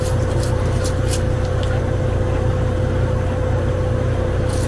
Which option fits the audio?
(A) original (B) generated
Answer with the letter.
A